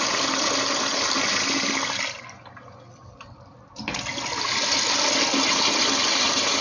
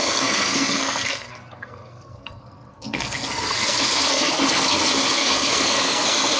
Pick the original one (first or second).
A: first